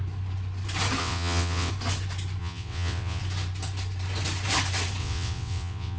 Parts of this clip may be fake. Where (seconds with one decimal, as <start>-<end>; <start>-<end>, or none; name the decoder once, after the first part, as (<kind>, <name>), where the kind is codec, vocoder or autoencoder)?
1.0-1.7 (vocoder, WaveNeXt); 2.4-3.2; 5.0-6.0